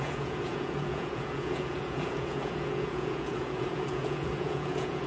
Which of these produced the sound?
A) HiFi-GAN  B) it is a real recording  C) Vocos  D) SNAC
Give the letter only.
C